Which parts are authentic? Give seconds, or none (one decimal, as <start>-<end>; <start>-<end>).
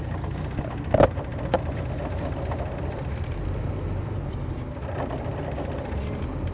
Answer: 0.0-1.3; 4.5-6.5